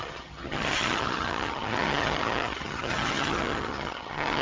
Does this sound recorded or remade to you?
remade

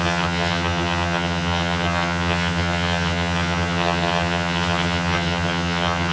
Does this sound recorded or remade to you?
remade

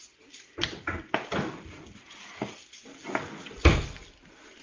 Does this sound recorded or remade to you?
recorded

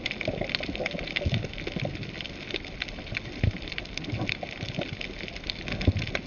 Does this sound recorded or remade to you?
recorded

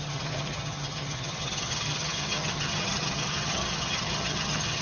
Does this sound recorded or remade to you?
remade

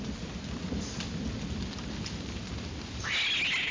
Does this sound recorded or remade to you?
recorded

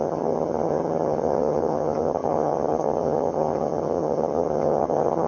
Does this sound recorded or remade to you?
remade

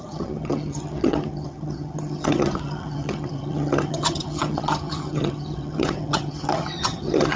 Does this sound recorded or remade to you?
remade